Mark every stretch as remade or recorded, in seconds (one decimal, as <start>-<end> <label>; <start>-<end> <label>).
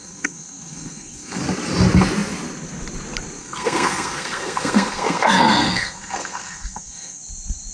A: 0.0-1.4 remade; 1.4-3.4 recorded; 3.4-7.2 remade; 7.2-7.7 recorded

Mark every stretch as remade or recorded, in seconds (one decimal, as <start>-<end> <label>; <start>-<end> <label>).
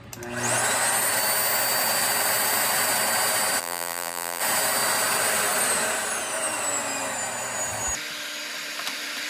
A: 0.0-3.6 recorded; 3.6-4.4 remade; 4.4-9.3 recorded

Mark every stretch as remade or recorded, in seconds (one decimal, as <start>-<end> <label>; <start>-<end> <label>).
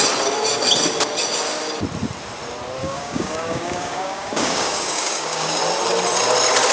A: 0.0-2.8 recorded; 2.8-5.6 remade; 5.6-6.7 recorded